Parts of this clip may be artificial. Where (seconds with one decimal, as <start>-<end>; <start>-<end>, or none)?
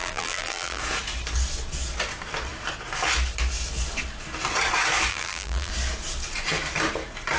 0.0-0.8; 5.1-5.7